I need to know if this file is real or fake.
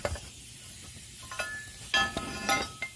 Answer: real